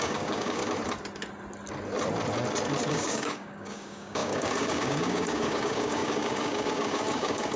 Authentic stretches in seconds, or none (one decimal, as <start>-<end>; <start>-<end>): 0.6-2.9